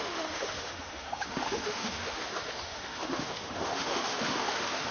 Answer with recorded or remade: remade